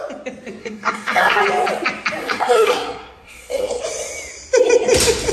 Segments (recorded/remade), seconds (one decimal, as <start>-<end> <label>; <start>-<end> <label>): 0.0-0.6 recorded; 0.6-1.4 remade; 1.4-2.2 recorded; 2.2-3.8 remade; 3.8-5.3 recorded